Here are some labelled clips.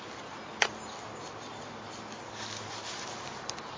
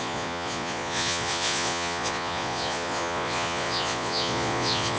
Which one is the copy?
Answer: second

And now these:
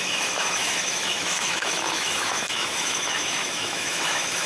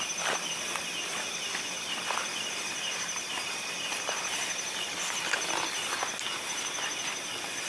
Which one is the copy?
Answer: first